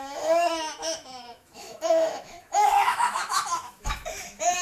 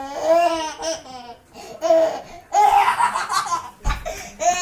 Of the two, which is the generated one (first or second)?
first